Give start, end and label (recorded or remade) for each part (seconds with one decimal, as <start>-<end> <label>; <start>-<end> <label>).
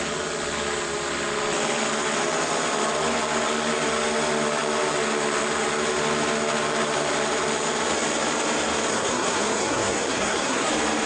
0.0-8.9 recorded; 8.9-10.7 remade; 10.7-11.1 recorded